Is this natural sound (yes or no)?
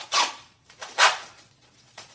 no